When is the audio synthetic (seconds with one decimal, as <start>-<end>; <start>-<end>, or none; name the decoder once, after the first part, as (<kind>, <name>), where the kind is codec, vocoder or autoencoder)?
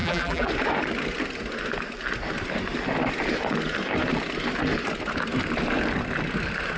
0.0-0.5 (vocoder, BigVGAN v2)